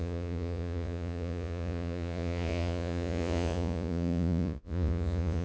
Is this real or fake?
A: fake